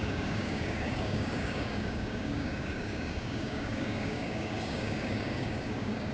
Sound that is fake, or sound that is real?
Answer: fake